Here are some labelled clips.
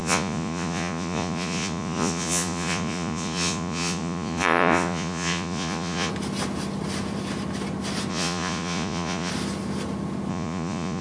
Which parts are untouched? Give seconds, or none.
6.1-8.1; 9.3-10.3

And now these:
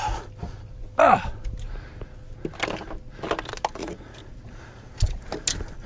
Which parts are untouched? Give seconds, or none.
0.0-3.8; 4.3-5.9

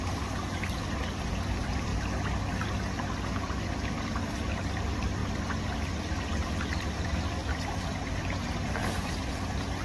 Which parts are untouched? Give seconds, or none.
1.9-3.4; 4.2-4.8